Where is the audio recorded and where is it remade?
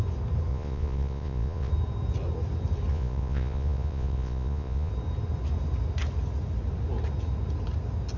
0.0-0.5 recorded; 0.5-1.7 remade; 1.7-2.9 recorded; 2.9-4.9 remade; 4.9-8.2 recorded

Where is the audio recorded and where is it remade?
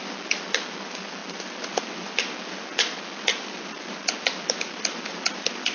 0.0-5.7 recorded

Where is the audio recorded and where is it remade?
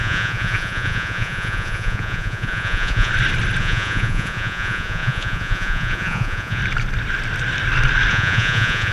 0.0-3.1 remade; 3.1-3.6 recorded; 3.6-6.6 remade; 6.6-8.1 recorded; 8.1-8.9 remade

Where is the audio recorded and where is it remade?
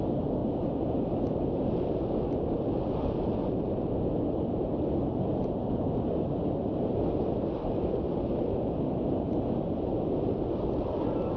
0.0-11.4 recorded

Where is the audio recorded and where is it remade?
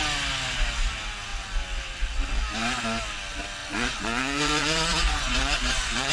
0.0-3.6 recorded; 3.6-6.1 remade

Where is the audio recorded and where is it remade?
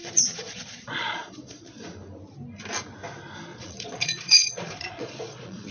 0.0-1.8 remade; 1.8-3.5 recorded; 3.5-5.7 remade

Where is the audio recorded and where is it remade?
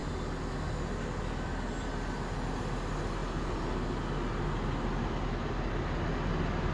0.0-6.7 recorded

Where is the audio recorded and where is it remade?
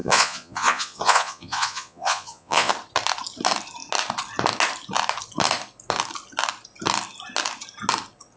0.0-2.7 remade; 2.7-8.4 recorded